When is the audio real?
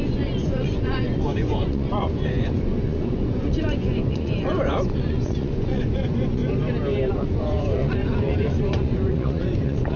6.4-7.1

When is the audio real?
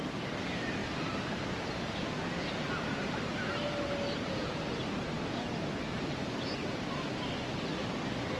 0.0-8.4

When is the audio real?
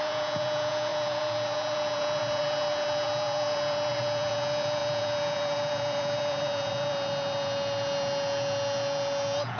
none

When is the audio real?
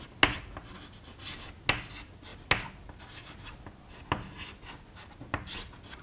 0.0-6.0